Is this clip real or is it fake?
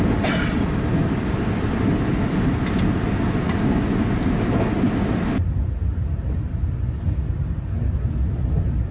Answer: real